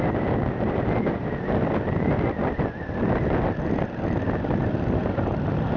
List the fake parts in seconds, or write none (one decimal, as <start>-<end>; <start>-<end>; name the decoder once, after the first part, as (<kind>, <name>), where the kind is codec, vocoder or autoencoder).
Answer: none